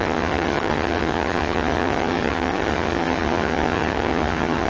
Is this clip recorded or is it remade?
remade